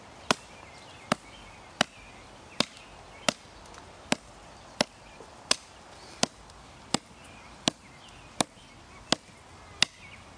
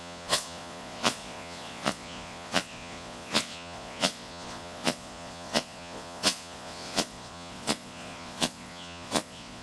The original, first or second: first